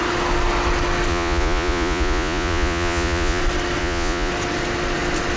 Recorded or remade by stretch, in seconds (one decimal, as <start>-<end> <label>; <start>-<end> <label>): 0.0-1.1 recorded; 1.1-3.4 remade; 3.4-3.8 recorded; 3.8-4.3 remade; 4.3-5.4 recorded